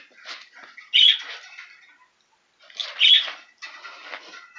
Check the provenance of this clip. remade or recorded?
recorded